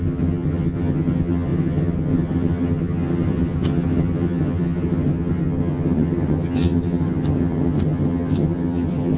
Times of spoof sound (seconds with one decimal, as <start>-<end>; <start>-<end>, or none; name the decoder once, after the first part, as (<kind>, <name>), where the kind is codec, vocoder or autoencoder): 0.0-9.2 (vocoder, HiFi-GAN)